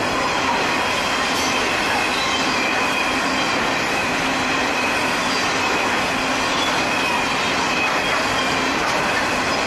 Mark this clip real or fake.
real